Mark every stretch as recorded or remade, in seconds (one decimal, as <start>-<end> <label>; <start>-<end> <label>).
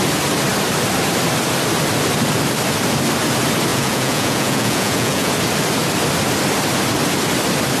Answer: 0.0-3.7 recorded; 3.7-5.3 remade; 5.3-7.8 recorded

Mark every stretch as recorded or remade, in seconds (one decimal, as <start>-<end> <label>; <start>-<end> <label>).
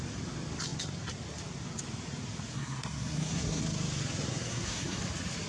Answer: 0.0-2.5 recorded; 2.5-3.6 remade; 3.6-4.3 recorded; 4.3-5.0 remade; 5.0-5.5 recorded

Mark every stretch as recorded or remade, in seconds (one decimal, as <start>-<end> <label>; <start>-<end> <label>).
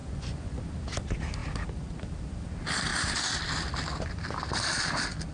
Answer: 0.0-0.6 remade; 0.6-5.3 recorded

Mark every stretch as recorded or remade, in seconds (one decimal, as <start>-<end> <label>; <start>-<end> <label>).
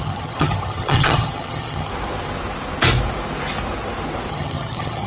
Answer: 0.0-1.9 remade; 1.9-4.3 recorded; 4.3-5.1 remade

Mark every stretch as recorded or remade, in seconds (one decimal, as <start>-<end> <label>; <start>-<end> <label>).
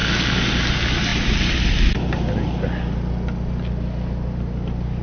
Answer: 0.0-5.0 recorded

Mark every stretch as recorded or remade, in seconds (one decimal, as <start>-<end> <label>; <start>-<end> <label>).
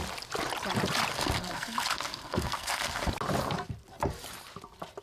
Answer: 0.0-1.1 recorded; 1.1-3.1 remade; 3.1-5.0 recorded